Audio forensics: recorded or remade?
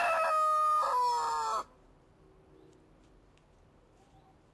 recorded